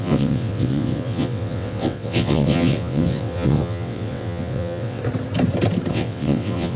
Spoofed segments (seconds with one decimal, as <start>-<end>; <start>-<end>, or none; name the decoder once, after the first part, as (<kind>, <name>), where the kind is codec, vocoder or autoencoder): 0.0-5.0 (vocoder, WaveNeXt); 5.9-6.8